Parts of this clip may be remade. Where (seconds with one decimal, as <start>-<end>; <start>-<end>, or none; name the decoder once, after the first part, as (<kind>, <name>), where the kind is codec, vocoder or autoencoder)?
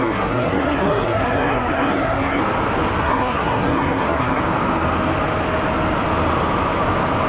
0.0-2.4 (codec, SNAC); 3.0-4.4